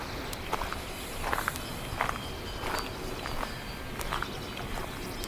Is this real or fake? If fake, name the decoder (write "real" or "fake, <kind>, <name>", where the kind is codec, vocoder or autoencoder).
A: real